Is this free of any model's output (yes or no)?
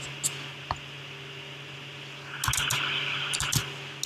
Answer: yes